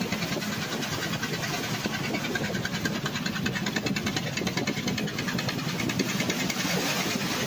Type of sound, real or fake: real